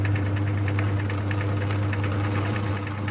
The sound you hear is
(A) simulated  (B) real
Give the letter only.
B